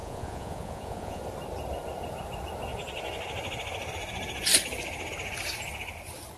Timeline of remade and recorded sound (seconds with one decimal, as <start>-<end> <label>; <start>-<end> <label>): 0.0-1.2 remade; 1.2-6.4 recorded